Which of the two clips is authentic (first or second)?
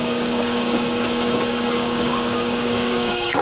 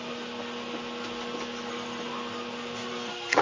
second